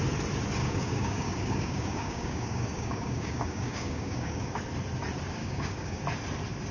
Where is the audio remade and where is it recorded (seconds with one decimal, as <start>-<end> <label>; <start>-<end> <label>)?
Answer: 0.0-0.6 recorded; 0.6-4.6 remade; 4.6-5.4 recorded; 5.4-6.0 remade; 6.0-6.7 recorded